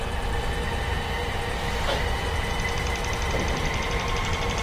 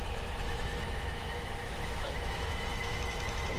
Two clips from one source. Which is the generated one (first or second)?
second